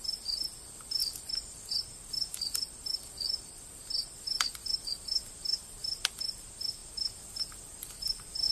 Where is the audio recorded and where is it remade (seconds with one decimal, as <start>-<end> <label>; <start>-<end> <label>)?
0.0-1.0 recorded; 1.0-1.6 remade; 1.6-2.3 recorded; 2.3-4.1 remade; 4.1-8.5 recorded